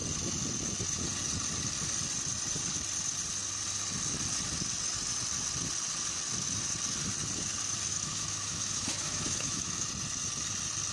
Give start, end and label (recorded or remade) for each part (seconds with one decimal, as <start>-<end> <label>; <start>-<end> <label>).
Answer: 0.0-7.9 recorded; 7.9-9.9 remade; 9.9-10.9 recorded